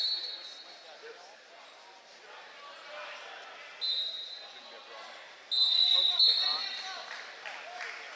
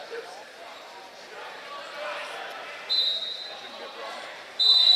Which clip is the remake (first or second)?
second